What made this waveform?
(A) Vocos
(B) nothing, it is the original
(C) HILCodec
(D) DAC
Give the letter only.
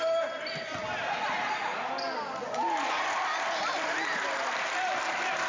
B